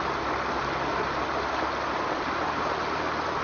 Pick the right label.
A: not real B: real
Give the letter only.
B